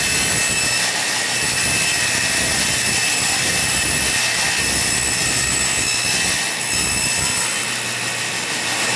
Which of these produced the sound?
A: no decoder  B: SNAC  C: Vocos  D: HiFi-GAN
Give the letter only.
A